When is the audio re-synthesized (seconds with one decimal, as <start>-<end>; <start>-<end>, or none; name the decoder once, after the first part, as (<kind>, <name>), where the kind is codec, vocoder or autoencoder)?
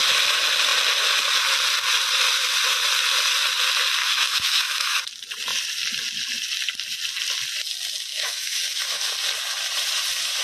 4.0-5.0 (autoencoder, DAC-VAE); 8.1-9.0